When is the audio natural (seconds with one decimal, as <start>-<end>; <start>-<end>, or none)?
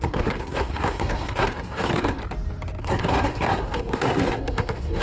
2.2-2.8